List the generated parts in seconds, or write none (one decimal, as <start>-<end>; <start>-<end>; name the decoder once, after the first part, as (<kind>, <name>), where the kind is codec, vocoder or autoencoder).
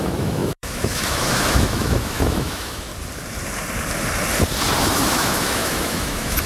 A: 0.0-2.9 (autoencoder, DAC-VAE); 4.8-6.5